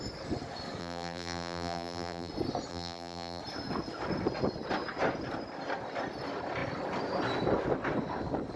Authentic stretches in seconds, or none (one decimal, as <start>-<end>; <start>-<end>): 0.0-0.8; 2.3-2.7; 3.4-8.6